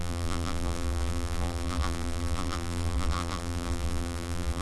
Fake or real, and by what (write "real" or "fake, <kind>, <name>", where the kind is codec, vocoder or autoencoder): fake, vocoder, BigVGAN v2